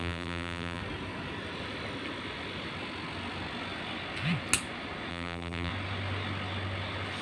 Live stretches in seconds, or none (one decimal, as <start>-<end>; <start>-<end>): 0.8-5.1; 5.7-7.2